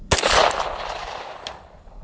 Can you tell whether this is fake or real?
real